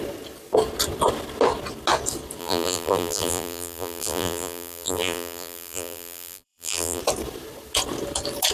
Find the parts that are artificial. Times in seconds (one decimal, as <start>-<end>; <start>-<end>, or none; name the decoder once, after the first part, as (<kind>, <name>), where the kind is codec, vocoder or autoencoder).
2.4-7.0 (vocoder, BigVGAN v2)

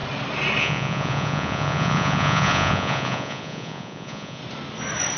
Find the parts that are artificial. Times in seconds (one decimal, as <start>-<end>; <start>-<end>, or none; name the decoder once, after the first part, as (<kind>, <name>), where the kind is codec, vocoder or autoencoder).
0.6-4.4 (vocoder, Vocos)

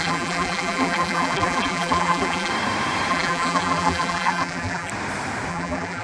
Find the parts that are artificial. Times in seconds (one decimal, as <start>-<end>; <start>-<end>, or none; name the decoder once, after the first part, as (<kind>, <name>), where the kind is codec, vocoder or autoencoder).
0.0-2.5 (vocoder, BigVGAN v2); 3.1-4.9; 5.5-6.0

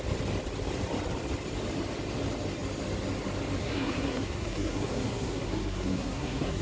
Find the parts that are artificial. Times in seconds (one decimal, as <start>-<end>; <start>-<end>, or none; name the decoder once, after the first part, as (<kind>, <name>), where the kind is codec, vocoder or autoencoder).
3.6-6.6 (codec, SNAC)

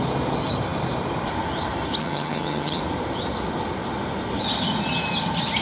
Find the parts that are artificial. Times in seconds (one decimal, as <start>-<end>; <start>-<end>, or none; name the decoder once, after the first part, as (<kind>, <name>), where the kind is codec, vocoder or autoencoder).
2.0-2.8 (vocoder, HiFi-GAN)

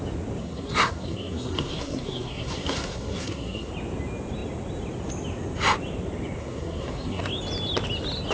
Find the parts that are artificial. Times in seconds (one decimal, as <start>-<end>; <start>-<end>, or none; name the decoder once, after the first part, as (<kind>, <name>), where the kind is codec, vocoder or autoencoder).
0.4-3.7 (codec, SNAC); 6.4-7.2